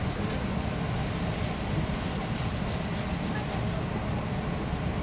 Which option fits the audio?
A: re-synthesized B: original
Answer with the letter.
B